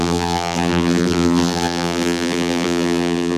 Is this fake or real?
fake